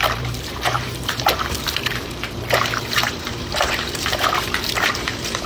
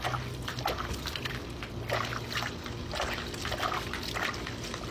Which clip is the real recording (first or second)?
second